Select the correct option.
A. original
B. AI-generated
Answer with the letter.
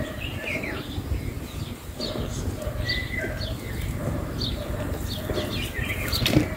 A